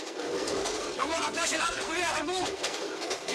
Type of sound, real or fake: fake